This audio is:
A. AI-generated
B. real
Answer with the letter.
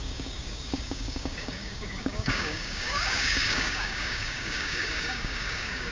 A